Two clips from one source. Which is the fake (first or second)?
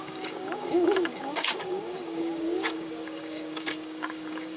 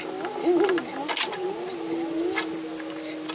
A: first